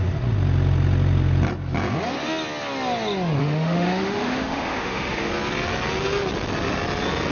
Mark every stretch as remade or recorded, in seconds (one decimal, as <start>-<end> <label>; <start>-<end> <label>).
0.0-3.4 recorded; 3.4-5.3 remade; 5.3-7.3 recorded